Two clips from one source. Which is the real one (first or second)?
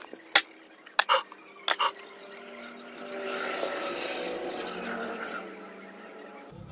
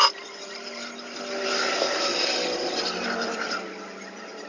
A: first